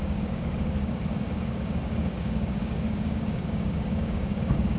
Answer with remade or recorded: remade